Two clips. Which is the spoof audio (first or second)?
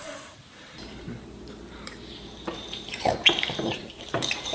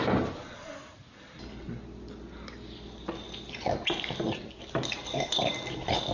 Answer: first